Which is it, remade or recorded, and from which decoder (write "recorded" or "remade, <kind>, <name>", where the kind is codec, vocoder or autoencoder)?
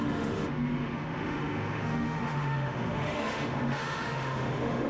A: remade, autoencoder, DAC-VAE